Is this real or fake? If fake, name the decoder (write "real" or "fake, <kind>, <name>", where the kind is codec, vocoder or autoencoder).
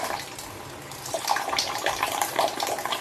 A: fake, vocoder, BigVGAN v2